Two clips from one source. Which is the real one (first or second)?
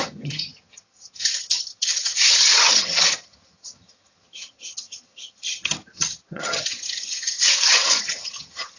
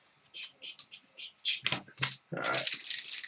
second